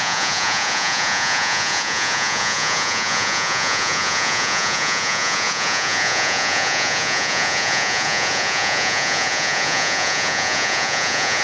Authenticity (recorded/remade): remade